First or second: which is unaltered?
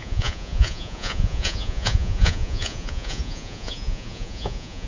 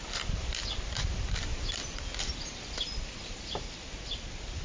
second